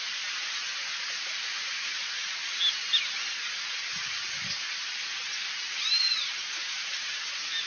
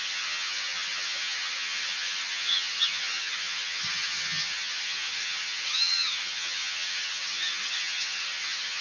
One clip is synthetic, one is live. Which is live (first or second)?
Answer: first